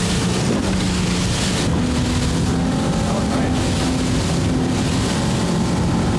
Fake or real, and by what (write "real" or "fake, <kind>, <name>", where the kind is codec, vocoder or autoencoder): real